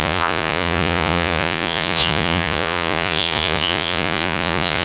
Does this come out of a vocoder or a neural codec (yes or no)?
yes